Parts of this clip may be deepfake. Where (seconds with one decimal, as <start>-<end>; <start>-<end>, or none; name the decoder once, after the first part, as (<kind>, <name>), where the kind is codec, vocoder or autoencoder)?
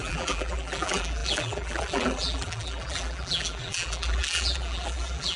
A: 0.0-5.4 (vocoder, BigVGAN v2)